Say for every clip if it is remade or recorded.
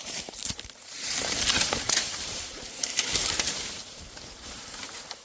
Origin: remade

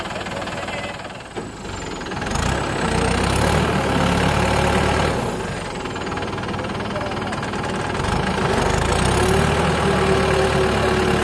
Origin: recorded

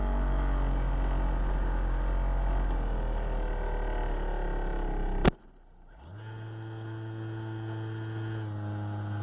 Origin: recorded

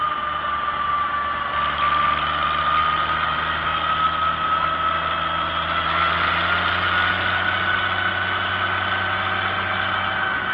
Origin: recorded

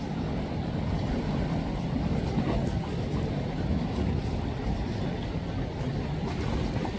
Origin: recorded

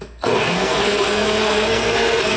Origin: remade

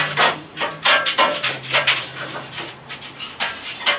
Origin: remade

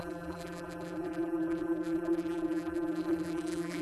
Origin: remade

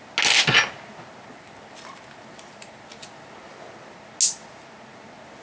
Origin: recorded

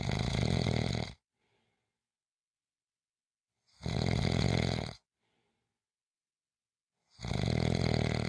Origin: recorded